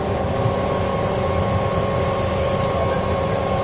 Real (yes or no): yes